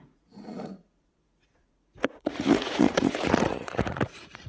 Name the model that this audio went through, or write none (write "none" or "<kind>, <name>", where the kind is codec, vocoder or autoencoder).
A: vocoder, Vocos